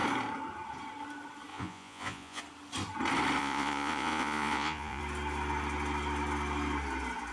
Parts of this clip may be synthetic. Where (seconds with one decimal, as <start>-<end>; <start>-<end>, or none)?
1.5-2.4; 3.4-5.0